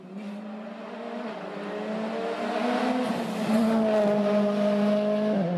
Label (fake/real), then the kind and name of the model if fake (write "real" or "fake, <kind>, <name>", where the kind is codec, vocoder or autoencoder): real